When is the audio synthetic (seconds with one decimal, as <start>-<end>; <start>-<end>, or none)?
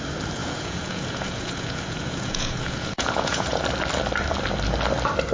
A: 0.4-3.6